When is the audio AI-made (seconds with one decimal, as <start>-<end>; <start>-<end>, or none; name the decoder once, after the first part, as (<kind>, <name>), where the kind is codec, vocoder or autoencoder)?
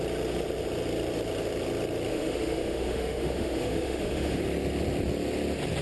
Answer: 2.1-4.4 (autoencoder, DAC-VAE)